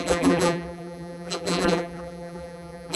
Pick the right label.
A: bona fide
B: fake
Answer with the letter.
B